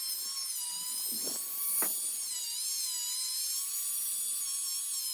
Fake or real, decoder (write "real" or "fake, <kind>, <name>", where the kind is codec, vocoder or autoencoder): real